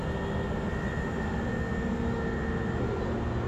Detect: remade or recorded recorded